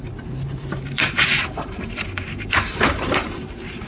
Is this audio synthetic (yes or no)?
yes